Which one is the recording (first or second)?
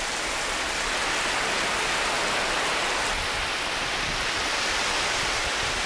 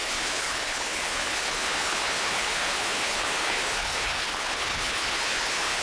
first